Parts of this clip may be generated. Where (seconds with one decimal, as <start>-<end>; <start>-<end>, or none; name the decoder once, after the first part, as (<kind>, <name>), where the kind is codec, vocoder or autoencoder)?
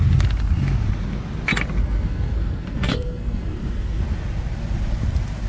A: 1.8-4.0 (codec, SNAC)